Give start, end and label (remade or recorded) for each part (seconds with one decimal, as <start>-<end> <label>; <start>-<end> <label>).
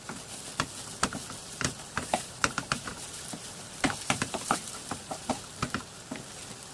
0.0-1.4 recorded; 1.4-5.4 remade; 5.4-6.7 recorded